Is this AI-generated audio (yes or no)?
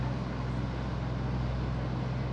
no